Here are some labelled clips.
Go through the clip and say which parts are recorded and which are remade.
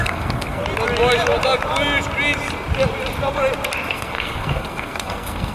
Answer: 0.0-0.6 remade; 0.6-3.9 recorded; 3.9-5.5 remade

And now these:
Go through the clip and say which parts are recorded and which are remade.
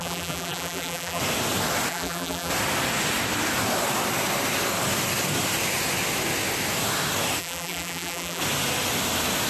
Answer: 0.0-1.2 remade; 1.2-1.9 recorded; 1.9-2.5 remade; 2.5-7.4 recorded; 7.4-8.4 remade; 8.4-9.5 recorded